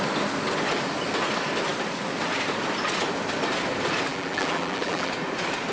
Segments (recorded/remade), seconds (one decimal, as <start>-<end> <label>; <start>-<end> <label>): 0.0-4.1 recorded; 4.1-5.1 remade; 5.1-5.7 recorded